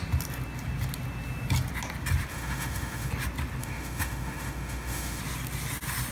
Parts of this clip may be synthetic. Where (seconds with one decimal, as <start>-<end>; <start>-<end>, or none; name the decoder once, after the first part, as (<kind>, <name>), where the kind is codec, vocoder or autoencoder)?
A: 2.3-3.1 (autoencoder, DAC-VAE); 3.6-5.2